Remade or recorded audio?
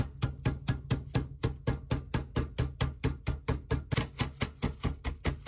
recorded